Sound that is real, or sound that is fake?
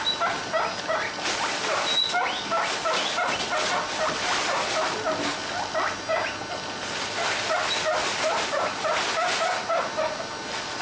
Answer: real